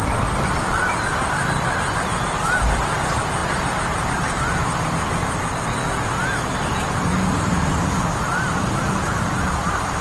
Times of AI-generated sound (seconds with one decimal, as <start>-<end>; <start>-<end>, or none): 0.0-5.2; 6.2-10.0